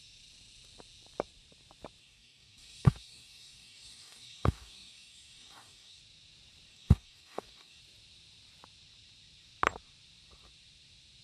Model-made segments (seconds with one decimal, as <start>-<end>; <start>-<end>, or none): 2.0-6.0; 6.7-7.8